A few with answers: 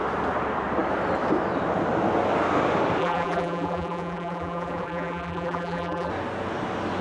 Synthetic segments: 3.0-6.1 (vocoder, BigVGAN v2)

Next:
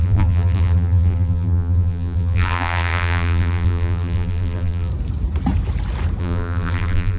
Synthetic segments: 0.0-4.9 (vocoder, BigVGAN v2); 6.2-7.2

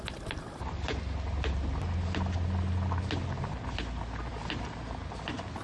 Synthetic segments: none